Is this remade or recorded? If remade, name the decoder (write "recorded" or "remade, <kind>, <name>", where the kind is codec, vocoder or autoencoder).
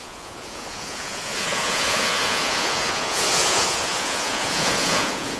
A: remade, vocoder, Vocos